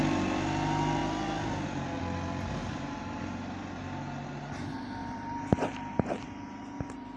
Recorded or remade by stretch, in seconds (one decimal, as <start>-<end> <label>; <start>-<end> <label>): 0.0-2.6 recorded; 2.6-3.2 remade; 3.2-5.0 recorded; 5.0-6.1 remade; 6.1-7.2 recorded